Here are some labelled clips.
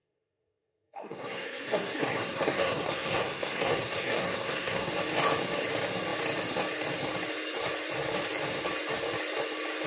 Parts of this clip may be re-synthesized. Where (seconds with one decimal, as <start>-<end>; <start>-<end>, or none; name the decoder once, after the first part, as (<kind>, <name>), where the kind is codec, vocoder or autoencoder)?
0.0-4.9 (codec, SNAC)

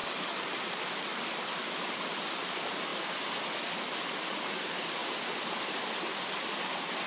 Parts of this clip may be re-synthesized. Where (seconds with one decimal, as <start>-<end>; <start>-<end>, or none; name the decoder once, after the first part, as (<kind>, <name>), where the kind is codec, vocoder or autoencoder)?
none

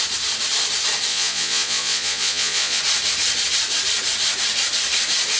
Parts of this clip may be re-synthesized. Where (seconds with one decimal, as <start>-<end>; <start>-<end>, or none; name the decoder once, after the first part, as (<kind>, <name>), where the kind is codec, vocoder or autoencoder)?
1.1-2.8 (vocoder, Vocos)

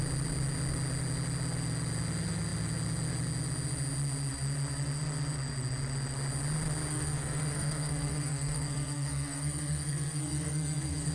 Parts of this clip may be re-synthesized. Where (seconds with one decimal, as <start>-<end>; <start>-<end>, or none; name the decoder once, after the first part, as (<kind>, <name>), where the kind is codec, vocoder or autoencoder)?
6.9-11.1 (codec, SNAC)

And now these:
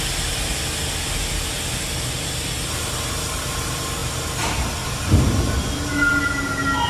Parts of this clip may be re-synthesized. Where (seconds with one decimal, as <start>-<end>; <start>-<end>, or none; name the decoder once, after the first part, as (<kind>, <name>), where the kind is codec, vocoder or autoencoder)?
none

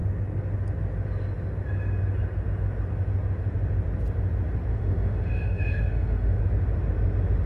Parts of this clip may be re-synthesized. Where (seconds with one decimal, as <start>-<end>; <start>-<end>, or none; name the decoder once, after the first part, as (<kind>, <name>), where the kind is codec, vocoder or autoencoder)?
4.7-6.4 (autoencoder, DAC-VAE)